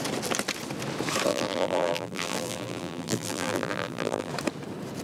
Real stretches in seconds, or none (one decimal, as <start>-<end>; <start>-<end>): 0.0-1.3; 4.3-5.0

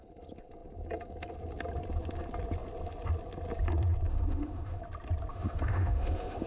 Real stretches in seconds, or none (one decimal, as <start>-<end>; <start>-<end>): 0.0-4.1; 4.8-5.3